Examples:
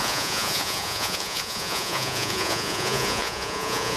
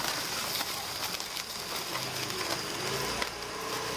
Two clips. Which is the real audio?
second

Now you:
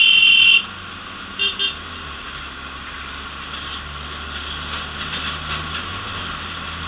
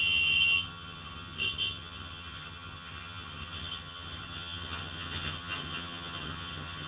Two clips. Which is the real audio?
first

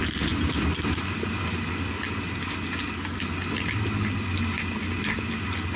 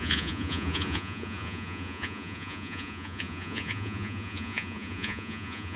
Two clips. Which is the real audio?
first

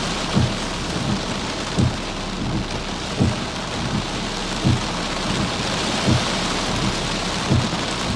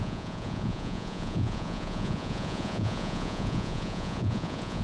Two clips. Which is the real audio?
first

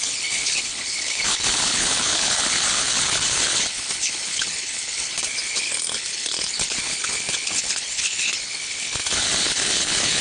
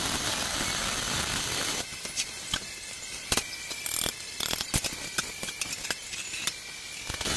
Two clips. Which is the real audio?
second